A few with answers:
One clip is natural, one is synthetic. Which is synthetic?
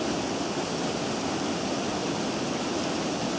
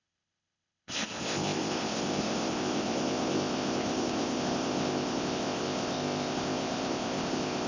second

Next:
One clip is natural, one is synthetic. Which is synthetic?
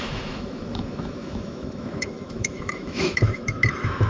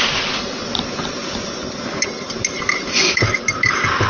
first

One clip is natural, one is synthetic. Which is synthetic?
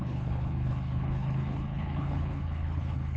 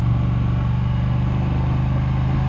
first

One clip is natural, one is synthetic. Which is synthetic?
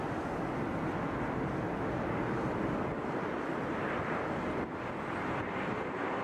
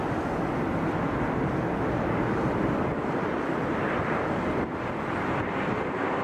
second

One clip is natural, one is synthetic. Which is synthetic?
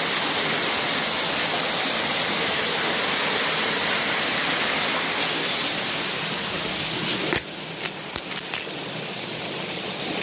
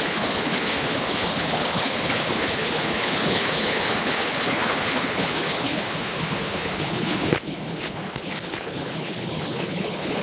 second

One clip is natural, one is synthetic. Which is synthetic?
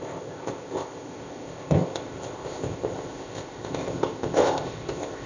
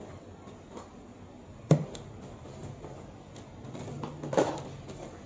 first